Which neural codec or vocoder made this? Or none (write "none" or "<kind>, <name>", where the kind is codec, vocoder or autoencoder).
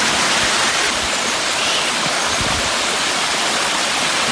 none